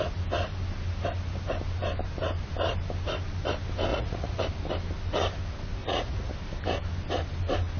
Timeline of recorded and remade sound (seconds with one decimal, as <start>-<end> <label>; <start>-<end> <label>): 0.0-3.9 recorded; 3.9-4.4 remade; 4.4-5.8 recorded; 5.8-6.3 remade; 6.3-7.8 recorded